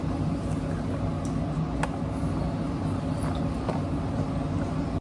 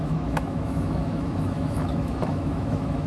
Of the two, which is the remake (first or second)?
second